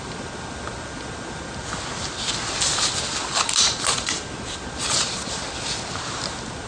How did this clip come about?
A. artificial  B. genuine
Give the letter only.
B